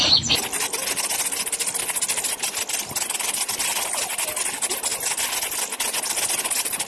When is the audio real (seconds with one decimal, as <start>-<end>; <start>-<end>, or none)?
0.0-6.9